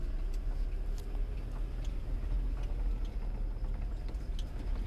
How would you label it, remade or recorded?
recorded